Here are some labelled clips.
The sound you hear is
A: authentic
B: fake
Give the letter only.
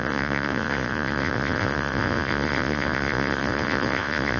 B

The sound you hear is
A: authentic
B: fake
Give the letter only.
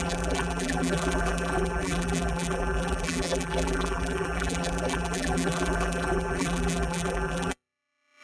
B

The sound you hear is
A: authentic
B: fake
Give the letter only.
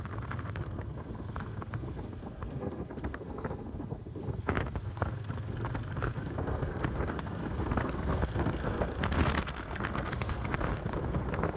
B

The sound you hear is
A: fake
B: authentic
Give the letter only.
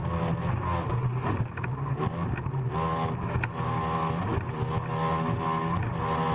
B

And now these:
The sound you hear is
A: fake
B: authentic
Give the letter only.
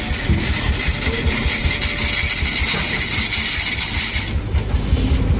B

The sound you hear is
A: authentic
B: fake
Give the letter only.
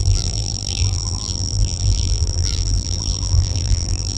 B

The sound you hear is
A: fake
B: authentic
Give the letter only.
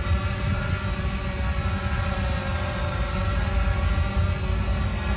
B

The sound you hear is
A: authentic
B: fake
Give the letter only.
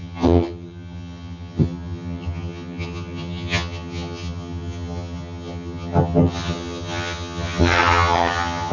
B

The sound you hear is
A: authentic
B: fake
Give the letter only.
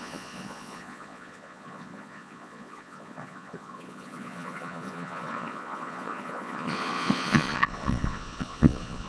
B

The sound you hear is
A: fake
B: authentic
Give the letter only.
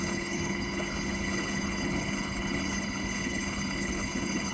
A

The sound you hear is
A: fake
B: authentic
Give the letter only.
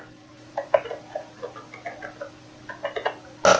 B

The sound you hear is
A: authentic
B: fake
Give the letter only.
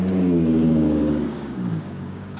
B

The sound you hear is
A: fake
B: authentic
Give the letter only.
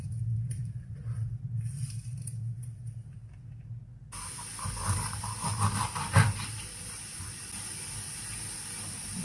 B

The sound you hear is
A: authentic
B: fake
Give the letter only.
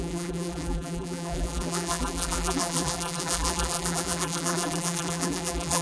B